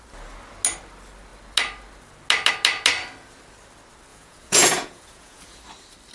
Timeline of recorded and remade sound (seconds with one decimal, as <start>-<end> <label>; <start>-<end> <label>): 0.0-4.1 recorded; 4.1-5.6 remade; 5.6-6.1 recorded